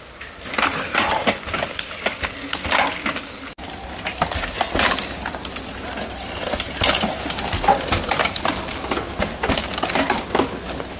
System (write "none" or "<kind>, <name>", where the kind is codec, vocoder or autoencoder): none